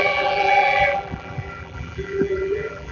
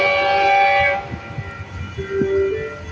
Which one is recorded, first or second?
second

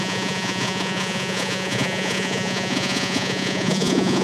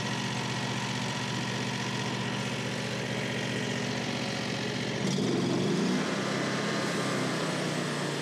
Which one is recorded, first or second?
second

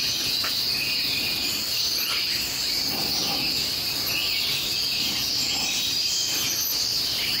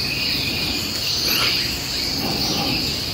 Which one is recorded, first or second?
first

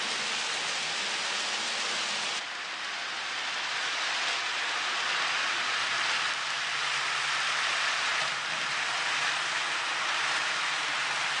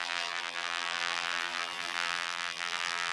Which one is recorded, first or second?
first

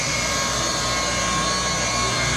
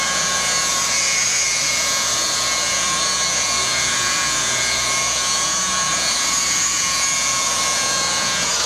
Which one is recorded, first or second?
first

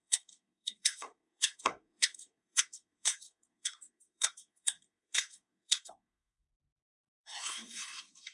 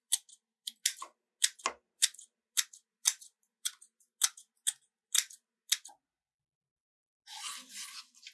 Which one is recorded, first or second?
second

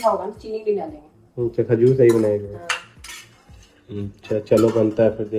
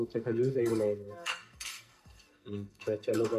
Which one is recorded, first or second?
first